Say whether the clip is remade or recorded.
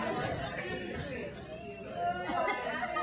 recorded